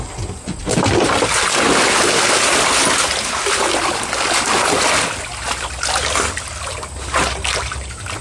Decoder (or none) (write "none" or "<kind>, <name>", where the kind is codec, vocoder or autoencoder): none